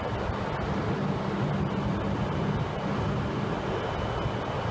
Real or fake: real